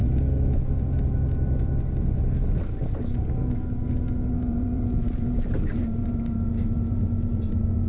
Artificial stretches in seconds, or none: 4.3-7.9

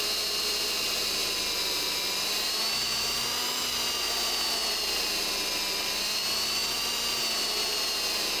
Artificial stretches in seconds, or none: none

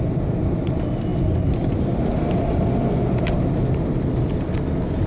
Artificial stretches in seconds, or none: none